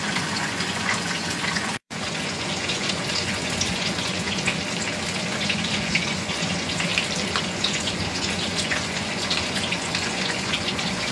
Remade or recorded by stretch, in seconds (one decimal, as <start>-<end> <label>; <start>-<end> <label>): 0.0-4.5 remade; 4.5-5.1 recorded; 5.1-6.9 remade; 6.9-7.4 recorded; 7.4-11.1 remade